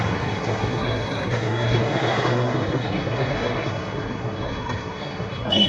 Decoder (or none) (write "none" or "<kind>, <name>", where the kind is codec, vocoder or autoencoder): codec, SNAC